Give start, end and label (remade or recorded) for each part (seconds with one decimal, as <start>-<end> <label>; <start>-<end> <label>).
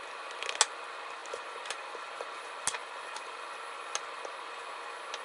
0.0-5.2 recorded